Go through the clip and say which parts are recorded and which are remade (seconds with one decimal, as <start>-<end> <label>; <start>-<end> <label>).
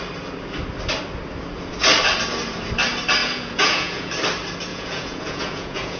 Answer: 0.0-3.2 recorded; 3.2-4.1 remade; 4.1-4.7 recorded; 4.7-6.0 remade